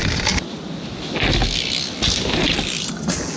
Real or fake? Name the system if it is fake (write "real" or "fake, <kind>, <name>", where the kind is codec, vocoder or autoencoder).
real